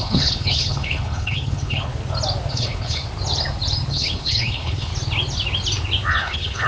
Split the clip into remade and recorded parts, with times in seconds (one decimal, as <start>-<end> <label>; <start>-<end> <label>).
0.0-1.9 remade; 1.9-2.5 recorded; 2.5-3.0 remade; 3.0-3.9 recorded; 3.9-4.9 remade; 4.9-6.1 recorded; 6.1-6.7 remade

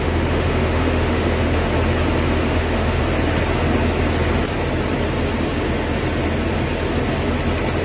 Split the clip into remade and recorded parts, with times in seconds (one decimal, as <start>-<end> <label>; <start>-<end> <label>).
0.0-1.7 remade; 1.7-2.3 recorded; 2.3-3.0 remade; 3.0-7.8 recorded

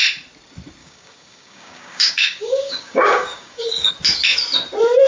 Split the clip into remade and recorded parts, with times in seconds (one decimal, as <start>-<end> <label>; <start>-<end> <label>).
0.0-0.8 recorded; 0.8-3.9 remade; 3.9-5.1 recorded

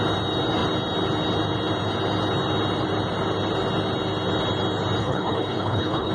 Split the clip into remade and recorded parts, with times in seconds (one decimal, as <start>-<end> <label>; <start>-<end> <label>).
0.0-5.0 recorded; 5.0-6.1 remade

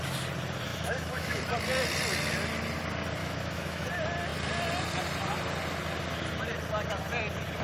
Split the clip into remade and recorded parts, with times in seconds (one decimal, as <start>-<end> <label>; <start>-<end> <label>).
0.0-0.7 recorded; 0.7-1.4 remade; 1.4-3.2 recorded; 3.2-3.9 remade; 3.9-7.6 recorded